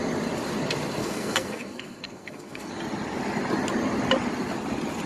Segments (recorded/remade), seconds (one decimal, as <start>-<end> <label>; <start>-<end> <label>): 0.0-1.0 recorded; 1.0-2.7 remade; 2.7-5.1 recorded